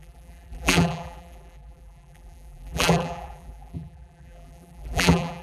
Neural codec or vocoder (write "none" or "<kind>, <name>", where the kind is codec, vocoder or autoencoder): vocoder, BigVGAN v2